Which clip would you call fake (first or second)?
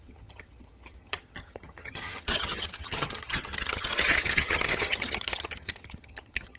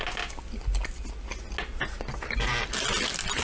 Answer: first